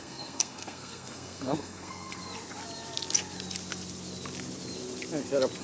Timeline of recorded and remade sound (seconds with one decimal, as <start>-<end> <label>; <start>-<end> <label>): 0.0-2.2 remade; 2.2-5.6 recorded